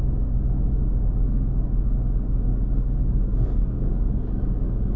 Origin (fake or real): fake